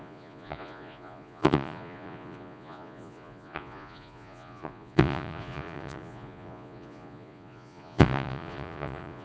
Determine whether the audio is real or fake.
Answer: fake